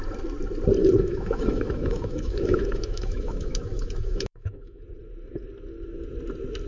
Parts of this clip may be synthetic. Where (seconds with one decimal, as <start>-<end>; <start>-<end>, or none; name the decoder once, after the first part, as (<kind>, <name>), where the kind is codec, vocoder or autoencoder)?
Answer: 0.8-4.8 (autoencoder, DAC-VAE)